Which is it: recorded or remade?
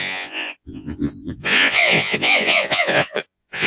remade